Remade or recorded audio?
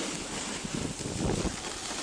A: recorded